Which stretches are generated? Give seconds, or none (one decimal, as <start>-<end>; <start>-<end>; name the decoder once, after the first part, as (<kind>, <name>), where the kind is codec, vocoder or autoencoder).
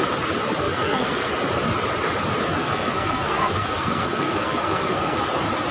0.6-1.3 (codec, SNAC); 2.6-5.2